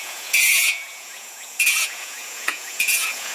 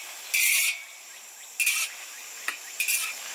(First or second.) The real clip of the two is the second